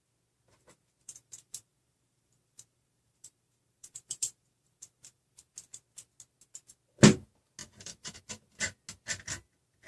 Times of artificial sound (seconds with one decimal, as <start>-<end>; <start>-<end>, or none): 1.0-5.5; 7.6-8.2